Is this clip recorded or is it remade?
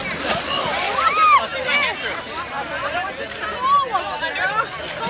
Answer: recorded